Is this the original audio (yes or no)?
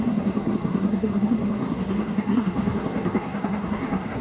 no